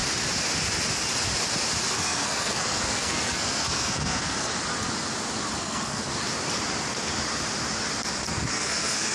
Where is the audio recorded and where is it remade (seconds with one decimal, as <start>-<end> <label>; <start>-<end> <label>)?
0.0-1.9 recorded; 1.9-4.5 remade; 4.5-5.6 recorded; 5.6-6.1 remade; 6.1-8.5 recorded; 8.5-9.1 remade